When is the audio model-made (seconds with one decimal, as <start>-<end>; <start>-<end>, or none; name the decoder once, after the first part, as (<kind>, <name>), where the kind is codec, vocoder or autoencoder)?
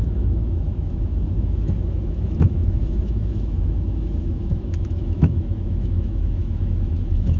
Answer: 0.0-7.4 (autoencoder, DAC-VAE)